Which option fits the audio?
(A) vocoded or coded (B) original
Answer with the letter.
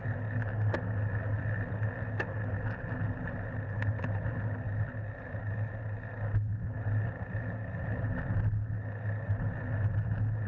B